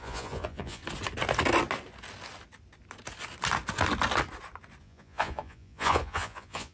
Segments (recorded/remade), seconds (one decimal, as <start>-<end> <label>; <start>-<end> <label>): 0.0-0.8 remade; 0.8-4.8 recorded; 4.8-6.7 remade